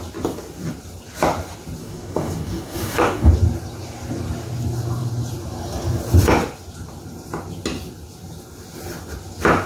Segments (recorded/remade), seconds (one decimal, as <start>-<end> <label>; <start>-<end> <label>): 0.0-1.8 recorded; 1.8-3.3 remade; 3.3-9.7 recorded